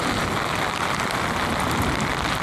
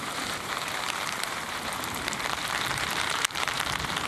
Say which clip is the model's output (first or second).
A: second